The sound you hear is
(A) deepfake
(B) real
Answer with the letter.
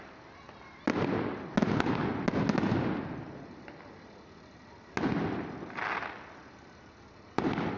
B